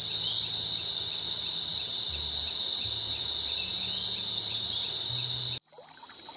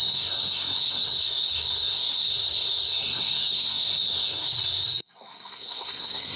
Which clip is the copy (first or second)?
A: second